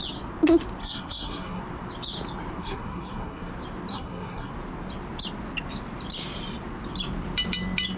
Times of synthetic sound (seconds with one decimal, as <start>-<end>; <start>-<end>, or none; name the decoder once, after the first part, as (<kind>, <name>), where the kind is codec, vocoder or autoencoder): 0.8-1.6 (codec, SNAC); 2.6-3.5; 3.9-4.5